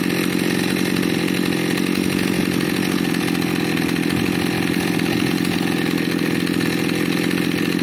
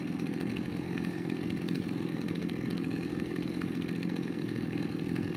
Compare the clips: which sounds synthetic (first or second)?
second